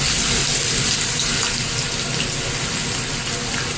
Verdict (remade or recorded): recorded